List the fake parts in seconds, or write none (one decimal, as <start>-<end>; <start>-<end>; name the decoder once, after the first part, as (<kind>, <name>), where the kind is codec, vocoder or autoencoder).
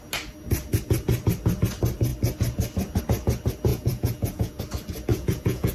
3.7-4.6 (vocoder, Vocos); 5.1-5.7